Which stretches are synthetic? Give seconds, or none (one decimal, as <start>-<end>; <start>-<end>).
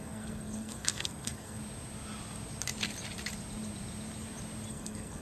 0.0-1.6; 4.7-5.2